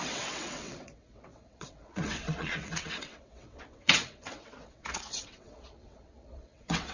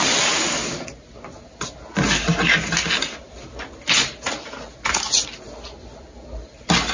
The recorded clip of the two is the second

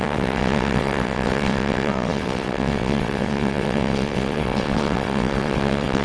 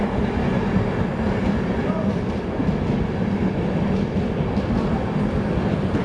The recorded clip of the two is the second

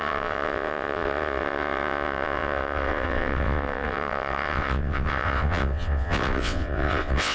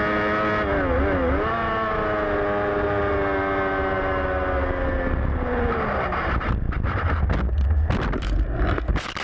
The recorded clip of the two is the second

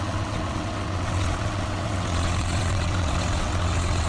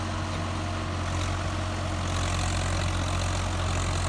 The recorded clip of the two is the second